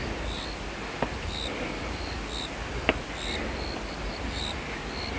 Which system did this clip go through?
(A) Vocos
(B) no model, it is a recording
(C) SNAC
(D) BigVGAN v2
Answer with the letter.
B